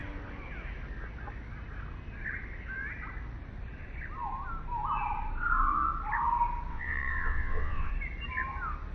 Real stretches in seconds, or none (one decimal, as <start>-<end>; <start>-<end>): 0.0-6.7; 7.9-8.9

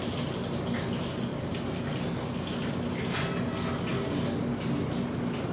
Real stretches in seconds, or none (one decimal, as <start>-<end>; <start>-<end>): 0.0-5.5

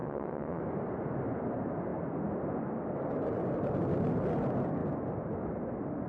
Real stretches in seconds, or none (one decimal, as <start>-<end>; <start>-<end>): 0.6-6.1

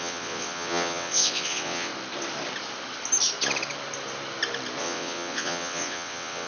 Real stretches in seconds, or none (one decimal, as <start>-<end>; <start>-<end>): 1.9-4.8

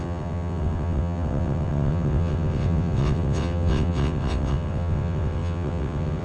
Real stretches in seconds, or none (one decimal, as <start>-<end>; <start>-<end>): none

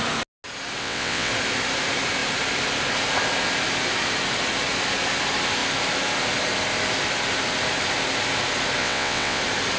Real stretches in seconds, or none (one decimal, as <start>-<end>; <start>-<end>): 0.0-0.8; 1.3-8.8; 9.4-9.8